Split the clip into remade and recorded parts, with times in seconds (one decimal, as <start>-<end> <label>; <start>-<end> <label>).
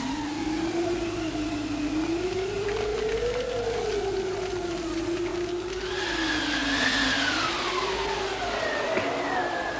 0.0-9.8 recorded